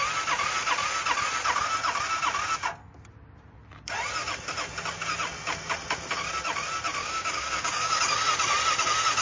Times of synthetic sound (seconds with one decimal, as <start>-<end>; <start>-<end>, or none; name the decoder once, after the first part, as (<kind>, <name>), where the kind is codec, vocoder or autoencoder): 7.0-8.0 (codec, DAC)

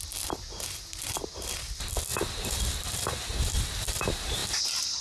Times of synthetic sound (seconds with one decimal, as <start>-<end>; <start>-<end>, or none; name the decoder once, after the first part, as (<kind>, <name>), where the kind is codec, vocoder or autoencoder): 2.1-3.0 (vocoder, BigVGAN v2)